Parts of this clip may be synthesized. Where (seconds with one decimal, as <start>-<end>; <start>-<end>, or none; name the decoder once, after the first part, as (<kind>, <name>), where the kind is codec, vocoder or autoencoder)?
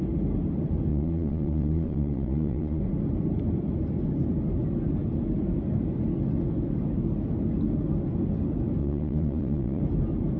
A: 0.9-2.8 (vocoder, Vocos); 8.8-9.8